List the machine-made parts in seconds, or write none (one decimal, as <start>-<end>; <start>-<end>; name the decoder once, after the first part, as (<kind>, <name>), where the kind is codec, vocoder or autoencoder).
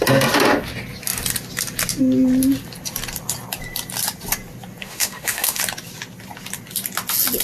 4.8-5.6 (autoencoder, DAC-VAE)